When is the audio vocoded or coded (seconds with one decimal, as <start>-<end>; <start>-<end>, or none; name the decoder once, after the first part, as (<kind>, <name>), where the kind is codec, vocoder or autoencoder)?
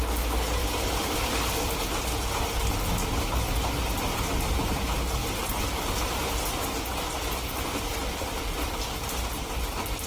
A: 0.6-1.3 (vocoder, BigVGAN v2); 5.2-5.9